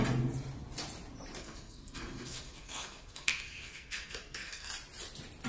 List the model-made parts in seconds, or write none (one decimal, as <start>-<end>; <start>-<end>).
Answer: 1.4-4.7